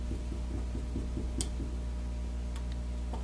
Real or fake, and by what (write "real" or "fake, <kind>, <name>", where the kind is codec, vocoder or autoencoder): real